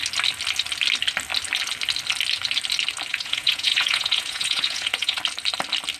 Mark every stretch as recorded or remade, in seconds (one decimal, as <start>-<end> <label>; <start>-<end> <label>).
0.0-3.1 recorded; 3.1-5.2 remade; 5.2-6.0 recorded